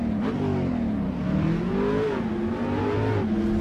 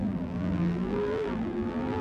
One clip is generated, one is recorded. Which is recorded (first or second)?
first